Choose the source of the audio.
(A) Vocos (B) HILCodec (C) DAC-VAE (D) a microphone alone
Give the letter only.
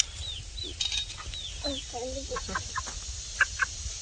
D